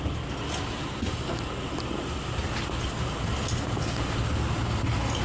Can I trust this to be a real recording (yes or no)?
yes